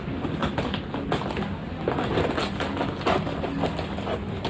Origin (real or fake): real